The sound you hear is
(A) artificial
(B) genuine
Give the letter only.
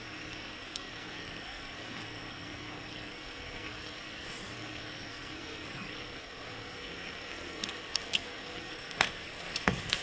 A